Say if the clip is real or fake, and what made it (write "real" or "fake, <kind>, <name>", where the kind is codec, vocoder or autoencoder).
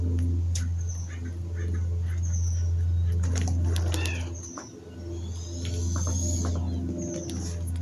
real